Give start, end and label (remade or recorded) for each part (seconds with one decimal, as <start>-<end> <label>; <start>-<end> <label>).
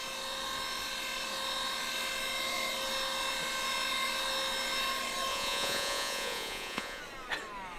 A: 0.0-5.3 recorded; 5.3-7.0 remade; 7.0-7.8 recorded